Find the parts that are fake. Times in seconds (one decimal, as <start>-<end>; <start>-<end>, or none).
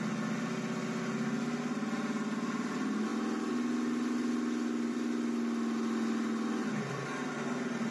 none